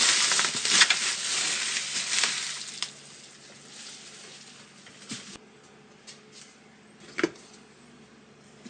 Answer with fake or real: real